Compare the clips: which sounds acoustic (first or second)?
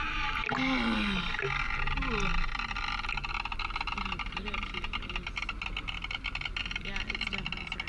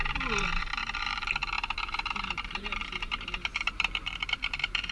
first